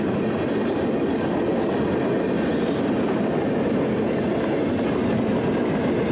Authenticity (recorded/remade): recorded